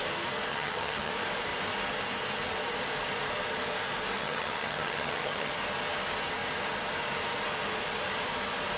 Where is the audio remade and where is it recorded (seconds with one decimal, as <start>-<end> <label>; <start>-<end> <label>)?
0.0-0.5 recorded; 0.5-1.1 remade; 1.1-4.2 recorded; 4.2-5.5 remade; 5.5-8.8 recorded